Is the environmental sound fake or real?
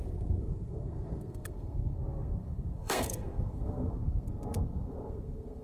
fake